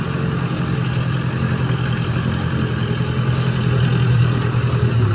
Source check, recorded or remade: recorded